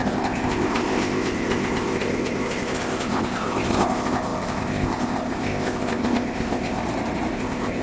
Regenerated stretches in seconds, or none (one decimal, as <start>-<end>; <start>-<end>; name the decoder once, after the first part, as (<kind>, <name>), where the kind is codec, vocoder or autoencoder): 0.0-6.8 (codec, ZipCodec); 7.3-7.8